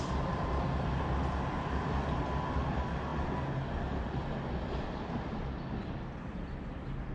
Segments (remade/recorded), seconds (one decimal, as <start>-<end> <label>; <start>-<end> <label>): 0.0-7.1 recorded